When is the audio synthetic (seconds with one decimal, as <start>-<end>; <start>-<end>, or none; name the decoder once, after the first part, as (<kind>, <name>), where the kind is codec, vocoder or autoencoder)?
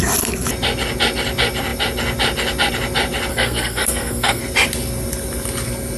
3.3-4.4 (codec, SNAC)